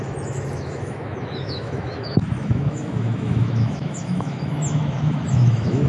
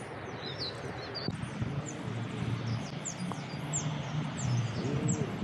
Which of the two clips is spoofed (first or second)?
first